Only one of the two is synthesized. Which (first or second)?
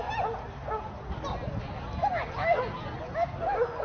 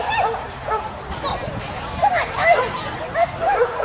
second